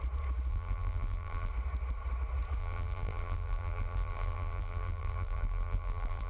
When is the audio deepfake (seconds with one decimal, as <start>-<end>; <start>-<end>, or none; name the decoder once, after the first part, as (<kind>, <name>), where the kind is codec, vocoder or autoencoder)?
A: 0.5-1.5 (vocoder, BigVGAN v2); 2.6-6.3